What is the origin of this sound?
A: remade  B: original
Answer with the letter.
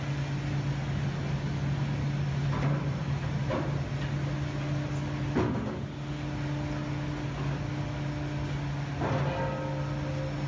B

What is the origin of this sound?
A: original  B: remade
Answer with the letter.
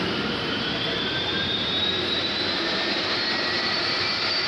B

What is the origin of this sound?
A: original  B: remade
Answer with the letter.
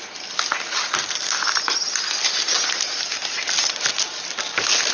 A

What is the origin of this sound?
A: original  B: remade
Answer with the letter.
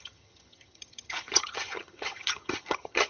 B